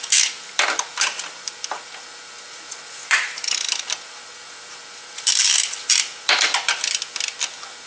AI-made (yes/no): yes